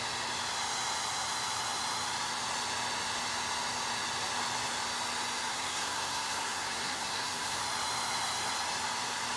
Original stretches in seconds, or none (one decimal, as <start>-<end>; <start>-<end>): 0.0-5.5; 7.6-9.4